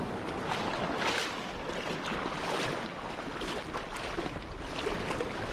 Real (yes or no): yes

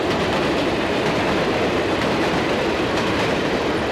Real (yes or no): no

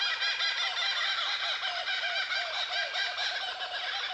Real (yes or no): yes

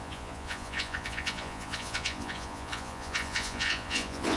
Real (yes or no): no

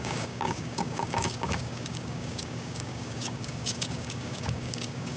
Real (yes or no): no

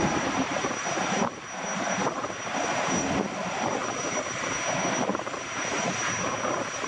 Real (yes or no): yes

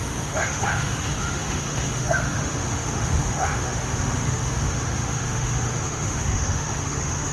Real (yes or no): no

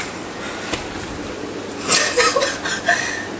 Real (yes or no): yes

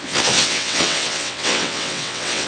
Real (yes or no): no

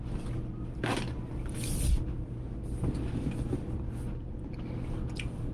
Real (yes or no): yes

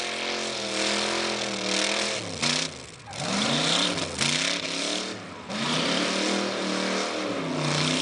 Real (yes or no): no